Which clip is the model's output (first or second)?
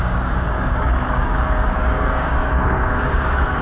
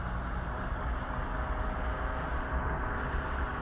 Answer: first